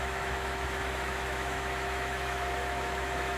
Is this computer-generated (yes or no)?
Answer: yes